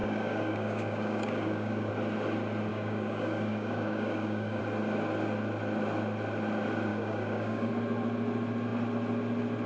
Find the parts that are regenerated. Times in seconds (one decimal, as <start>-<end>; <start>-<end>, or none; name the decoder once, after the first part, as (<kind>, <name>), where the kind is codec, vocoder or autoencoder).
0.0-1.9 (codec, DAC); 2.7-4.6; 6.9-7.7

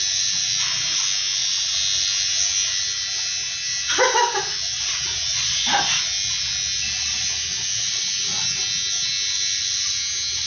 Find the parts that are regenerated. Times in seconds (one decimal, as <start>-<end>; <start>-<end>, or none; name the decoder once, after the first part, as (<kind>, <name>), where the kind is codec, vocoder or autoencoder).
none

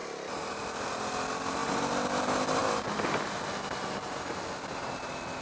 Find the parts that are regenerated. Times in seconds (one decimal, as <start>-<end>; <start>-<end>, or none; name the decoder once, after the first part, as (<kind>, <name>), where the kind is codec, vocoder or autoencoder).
none